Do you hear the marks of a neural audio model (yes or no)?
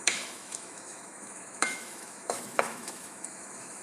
yes